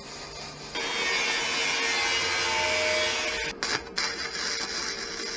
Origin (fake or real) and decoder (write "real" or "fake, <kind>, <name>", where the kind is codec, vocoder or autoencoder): real